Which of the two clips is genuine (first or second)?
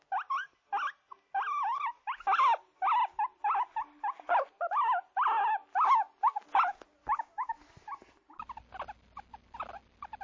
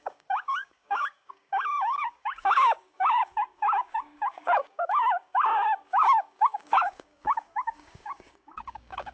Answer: first